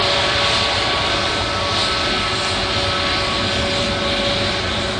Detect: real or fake real